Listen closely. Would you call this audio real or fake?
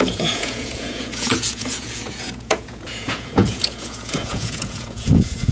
fake